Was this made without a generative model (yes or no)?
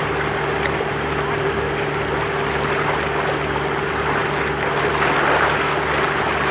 yes